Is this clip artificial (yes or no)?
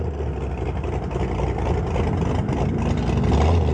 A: no